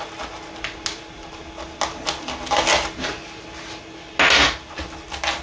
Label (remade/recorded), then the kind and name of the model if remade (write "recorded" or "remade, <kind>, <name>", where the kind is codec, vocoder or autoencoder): recorded